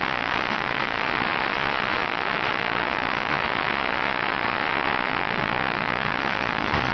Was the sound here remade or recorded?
remade